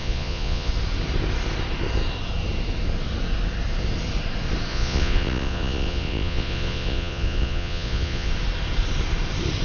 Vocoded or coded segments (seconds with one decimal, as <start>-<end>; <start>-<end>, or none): 0.0-0.7; 4.7-8.3